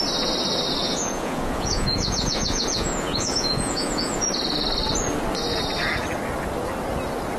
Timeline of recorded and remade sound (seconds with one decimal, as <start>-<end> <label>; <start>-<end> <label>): 0.0-0.8 recorded; 0.8-4.3 remade; 4.3-7.4 recorded

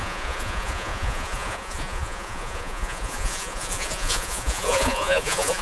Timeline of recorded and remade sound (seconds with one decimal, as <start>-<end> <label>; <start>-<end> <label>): 0.0-5.6 remade